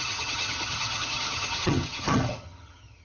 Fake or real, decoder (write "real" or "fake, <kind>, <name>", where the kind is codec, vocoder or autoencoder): fake, vocoder, HiFi-GAN